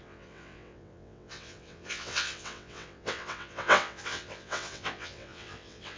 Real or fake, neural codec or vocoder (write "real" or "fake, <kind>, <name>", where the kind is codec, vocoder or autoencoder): fake, vocoder, WaveNeXt